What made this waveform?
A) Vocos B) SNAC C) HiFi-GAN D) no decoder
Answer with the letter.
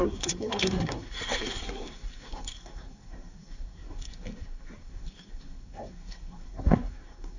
B